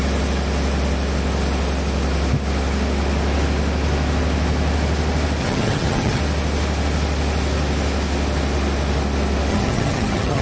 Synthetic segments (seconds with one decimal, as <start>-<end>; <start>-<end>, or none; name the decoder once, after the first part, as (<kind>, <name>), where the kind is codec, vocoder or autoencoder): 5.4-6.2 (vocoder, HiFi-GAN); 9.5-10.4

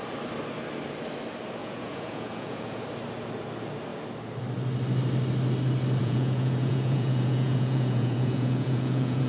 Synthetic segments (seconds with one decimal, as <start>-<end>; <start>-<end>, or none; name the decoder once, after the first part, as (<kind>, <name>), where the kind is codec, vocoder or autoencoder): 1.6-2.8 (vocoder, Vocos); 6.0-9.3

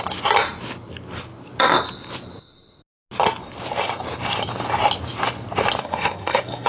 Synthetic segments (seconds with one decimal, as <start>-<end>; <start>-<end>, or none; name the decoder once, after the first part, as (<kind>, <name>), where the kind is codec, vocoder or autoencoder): 5.8-6.7 (codec, SNAC)

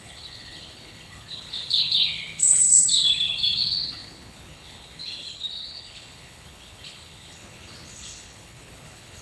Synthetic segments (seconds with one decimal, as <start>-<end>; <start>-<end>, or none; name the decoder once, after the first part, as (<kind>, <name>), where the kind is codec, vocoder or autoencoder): 0.0-9.2 (codec, HILCodec)